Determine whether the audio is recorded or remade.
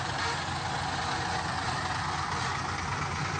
recorded